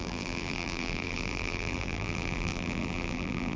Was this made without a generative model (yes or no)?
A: no